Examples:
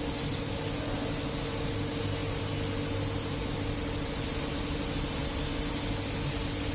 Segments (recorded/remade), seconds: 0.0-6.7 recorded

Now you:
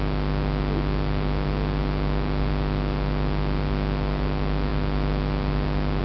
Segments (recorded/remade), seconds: 0.0-6.0 recorded

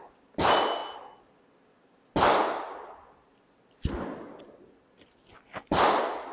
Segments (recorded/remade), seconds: 0.0-6.3 recorded

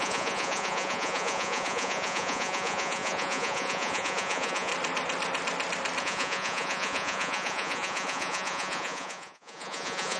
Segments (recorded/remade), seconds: 0.0-4.7 remade; 4.7-6.0 recorded; 6.0-10.2 remade

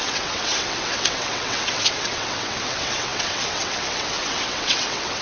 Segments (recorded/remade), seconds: 0.0-5.2 remade